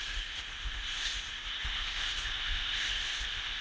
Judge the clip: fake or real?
fake